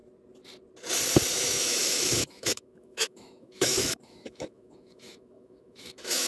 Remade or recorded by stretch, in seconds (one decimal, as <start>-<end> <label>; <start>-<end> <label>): 0.0-1.3 recorded; 1.3-6.3 remade